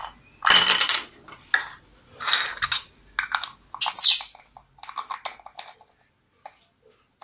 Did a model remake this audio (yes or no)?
no